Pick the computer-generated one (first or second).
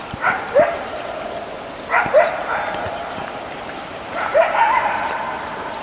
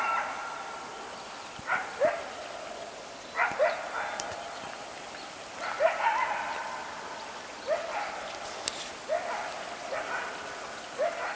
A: first